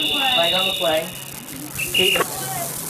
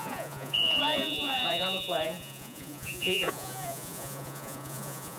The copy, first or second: second